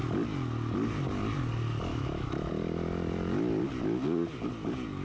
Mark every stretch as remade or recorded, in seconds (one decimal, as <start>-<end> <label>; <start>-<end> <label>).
0.0-1.9 recorded; 1.9-2.5 remade; 2.5-5.0 recorded